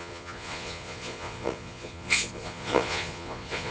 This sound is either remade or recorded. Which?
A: remade